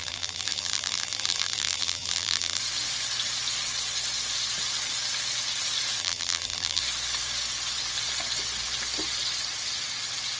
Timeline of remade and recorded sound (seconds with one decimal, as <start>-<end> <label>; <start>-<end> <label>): 0.0-2.6 remade; 2.6-6.0 recorded; 6.0-6.8 remade; 6.8-10.4 recorded